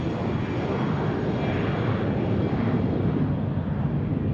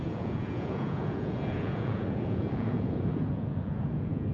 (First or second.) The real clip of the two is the first